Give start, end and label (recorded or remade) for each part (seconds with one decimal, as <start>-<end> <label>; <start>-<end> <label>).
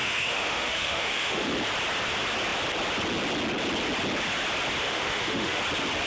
0.0-1.5 remade; 1.5-4.8 recorded; 4.8-5.6 remade; 5.6-6.1 recorded